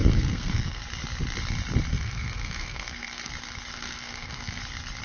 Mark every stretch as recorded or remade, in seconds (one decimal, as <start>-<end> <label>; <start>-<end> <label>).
0.0-0.8 remade; 0.8-1.9 recorded; 1.9-3.3 remade; 3.3-3.7 recorded; 3.7-4.6 remade; 4.6-5.0 recorded

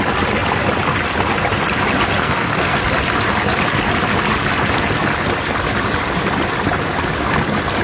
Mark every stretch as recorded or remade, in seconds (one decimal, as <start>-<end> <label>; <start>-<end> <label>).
0.0-2.2 recorded; 2.2-2.8 remade; 2.8-7.8 recorded

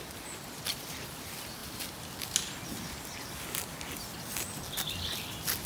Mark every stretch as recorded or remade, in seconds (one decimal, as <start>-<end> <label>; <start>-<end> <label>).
0.0-5.7 recorded